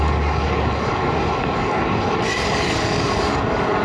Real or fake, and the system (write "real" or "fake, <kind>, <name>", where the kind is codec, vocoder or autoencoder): fake, codec, DAC